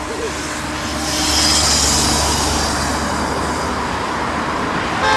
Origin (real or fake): real